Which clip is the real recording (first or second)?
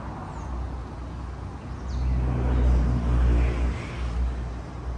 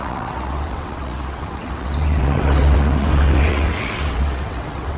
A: first